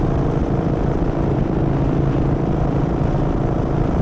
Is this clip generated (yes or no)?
no